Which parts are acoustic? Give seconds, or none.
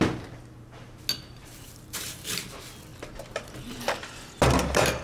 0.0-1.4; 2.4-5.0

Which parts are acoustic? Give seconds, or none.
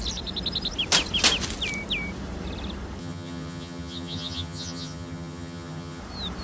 0.0-3.0; 6.0-6.4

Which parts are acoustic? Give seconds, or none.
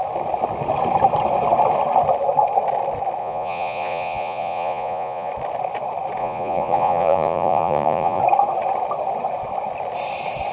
0.0-3.2; 5.3-6.2; 8.2-10.5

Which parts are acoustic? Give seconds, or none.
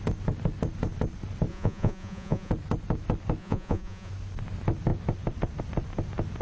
0.0-1.5; 2.5-3.4; 4.1-6.4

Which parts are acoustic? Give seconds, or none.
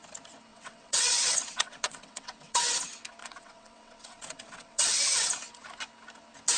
0.0-0.5; 2.7-3.2; 5.0-6.6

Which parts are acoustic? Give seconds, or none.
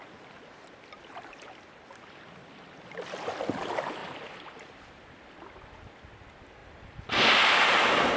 0.0-4.0; 4.9-8.2